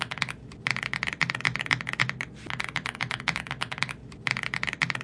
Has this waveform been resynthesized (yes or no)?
no